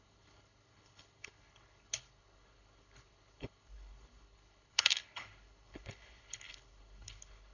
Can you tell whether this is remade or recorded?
remade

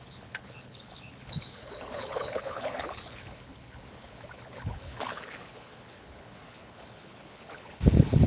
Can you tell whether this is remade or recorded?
remade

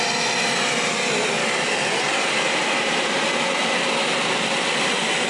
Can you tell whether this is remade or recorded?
recorded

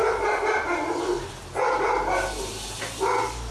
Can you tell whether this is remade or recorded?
recorded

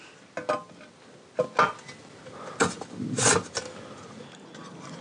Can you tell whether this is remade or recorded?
recorded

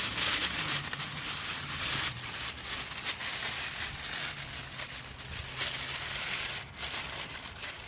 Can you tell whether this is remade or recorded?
recorded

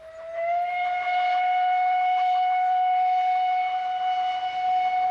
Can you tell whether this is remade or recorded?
recorded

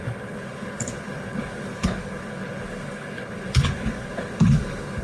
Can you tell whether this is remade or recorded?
remade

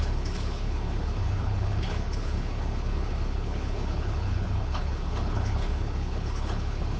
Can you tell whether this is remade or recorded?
remade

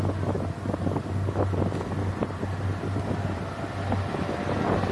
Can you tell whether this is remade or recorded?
recorded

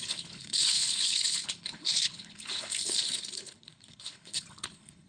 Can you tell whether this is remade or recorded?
remade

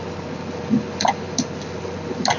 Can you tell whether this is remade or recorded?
recorded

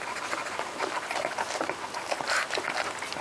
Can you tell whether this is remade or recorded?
recorded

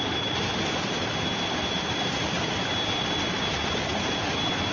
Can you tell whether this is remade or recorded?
recorded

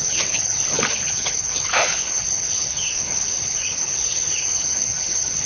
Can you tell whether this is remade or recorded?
remade